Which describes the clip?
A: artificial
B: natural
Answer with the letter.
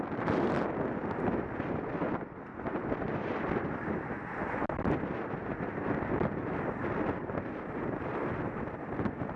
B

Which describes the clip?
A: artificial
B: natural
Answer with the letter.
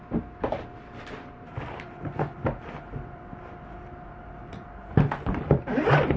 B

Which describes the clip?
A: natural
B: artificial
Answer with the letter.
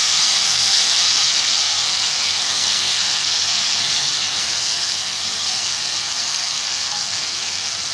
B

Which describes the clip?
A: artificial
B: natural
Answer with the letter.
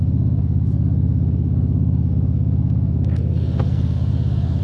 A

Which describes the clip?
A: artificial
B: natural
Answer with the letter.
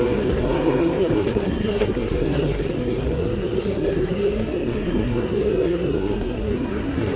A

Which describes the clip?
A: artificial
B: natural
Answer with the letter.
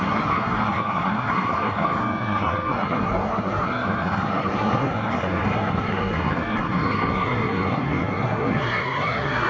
A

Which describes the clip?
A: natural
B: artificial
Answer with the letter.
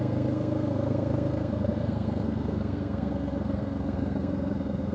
B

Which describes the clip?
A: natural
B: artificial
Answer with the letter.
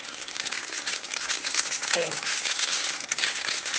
B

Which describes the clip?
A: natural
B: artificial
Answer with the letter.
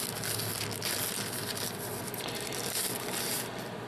A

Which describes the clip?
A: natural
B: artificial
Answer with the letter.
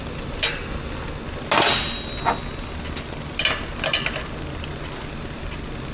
A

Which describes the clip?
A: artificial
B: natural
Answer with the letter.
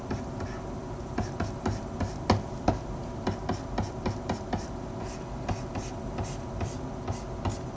B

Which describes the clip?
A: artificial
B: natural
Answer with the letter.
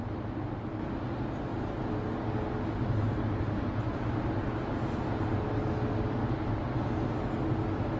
B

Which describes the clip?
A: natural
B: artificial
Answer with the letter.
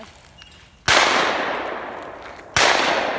A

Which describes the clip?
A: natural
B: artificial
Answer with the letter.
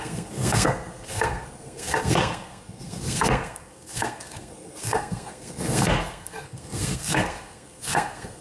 B